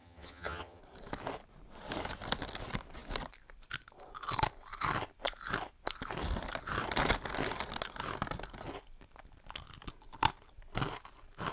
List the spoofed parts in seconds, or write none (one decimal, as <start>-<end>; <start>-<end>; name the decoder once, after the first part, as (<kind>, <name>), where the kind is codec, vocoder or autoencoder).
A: 0.0-0.8 (vocoder, HiFi-GAN)